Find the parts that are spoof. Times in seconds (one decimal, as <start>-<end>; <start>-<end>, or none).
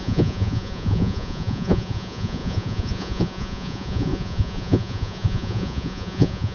0.0-6.5